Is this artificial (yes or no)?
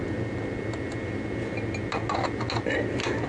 no